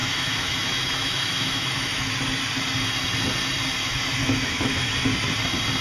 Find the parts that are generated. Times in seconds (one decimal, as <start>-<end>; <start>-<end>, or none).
0.0-2.1; 4.2-4.9